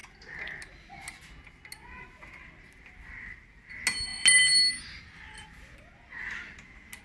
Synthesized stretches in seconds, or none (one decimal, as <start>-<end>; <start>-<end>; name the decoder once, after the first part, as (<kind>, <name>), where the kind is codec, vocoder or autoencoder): none